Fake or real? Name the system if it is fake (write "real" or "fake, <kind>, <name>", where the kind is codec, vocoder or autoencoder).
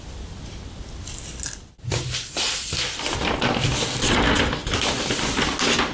real